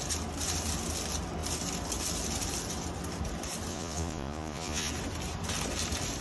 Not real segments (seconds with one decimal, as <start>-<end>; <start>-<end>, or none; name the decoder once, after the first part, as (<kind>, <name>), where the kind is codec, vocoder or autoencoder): 3.7-4.9 (vocoder, Vocos)